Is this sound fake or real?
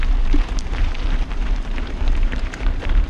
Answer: fake